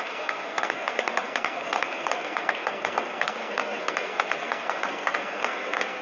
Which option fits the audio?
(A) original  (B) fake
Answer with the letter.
B